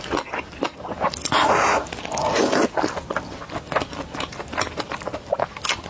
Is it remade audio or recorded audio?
recorded